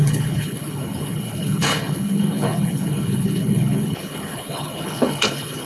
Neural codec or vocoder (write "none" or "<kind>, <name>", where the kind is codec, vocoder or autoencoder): codec, HILCodec